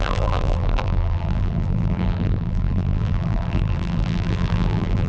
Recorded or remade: remade